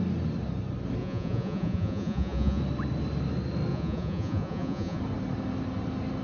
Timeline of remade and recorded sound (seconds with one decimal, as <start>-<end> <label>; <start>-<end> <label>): 0.0-1.0 recorded; 1.0-2.6 remade; 2.6-3.7 recorded; 3.7-5.0 remade; 5.0-6.2 recorded